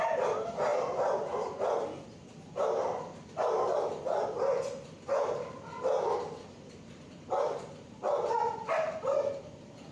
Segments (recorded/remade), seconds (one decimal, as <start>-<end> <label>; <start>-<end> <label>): 0.0-0.7 remade; 0.7-2.3 recorded; 2.3-9.9 remade